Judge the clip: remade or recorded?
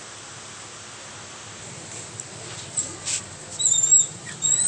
recorded